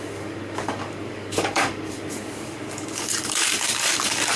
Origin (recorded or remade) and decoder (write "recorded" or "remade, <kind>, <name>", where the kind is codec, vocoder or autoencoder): remade, codec, DAC